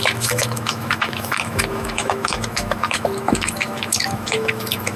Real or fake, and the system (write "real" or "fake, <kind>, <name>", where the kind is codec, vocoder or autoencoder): fake, autoencoder, DAC-VAE